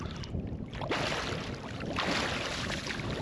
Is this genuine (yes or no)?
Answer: yes